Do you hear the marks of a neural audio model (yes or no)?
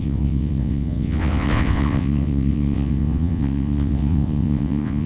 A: yes